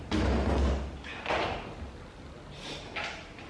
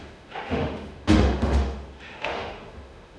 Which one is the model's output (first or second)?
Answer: second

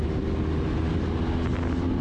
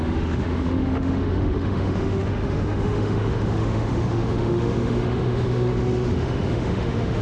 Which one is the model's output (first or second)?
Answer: second